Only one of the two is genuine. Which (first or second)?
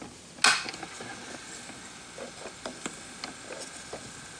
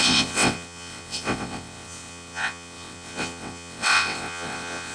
first